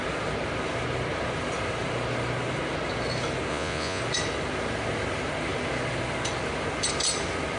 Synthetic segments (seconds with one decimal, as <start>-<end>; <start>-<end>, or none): 3.5-4.0